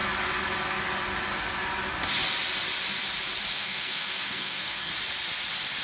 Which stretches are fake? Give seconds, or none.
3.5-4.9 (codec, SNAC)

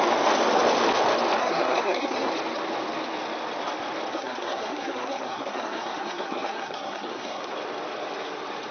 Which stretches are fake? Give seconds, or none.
1.4-2.3 (codec, SNAC); 4.1-7.5